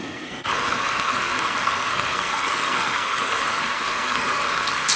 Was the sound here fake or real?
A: fake